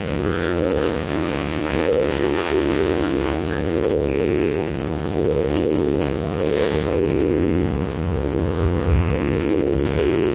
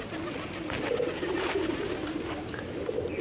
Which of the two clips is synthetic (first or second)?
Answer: first